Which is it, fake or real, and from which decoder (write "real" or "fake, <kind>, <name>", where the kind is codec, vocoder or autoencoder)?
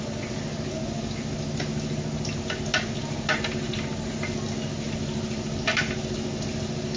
real